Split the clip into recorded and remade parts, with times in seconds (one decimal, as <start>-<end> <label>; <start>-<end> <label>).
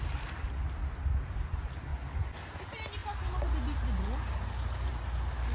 0.0-5.5 recorded